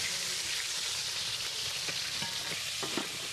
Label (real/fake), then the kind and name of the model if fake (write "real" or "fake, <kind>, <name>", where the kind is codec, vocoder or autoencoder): real